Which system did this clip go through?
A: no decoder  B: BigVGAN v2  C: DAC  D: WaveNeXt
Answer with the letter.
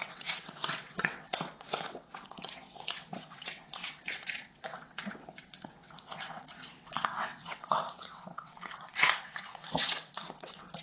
D